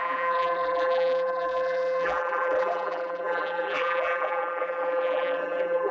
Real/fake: fake